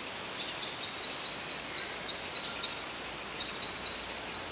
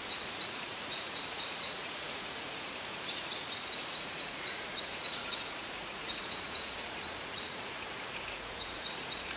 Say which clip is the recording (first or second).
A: first